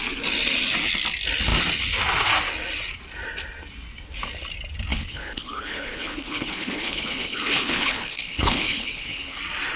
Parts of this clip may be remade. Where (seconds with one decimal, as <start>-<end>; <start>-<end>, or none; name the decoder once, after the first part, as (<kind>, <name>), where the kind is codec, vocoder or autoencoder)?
4.9-9.4 (codec, HILCodec)